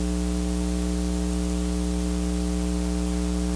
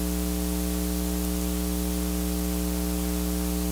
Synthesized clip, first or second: first